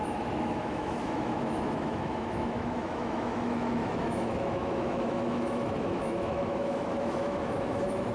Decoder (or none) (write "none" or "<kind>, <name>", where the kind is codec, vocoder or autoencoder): autoencoder, DAC-VAE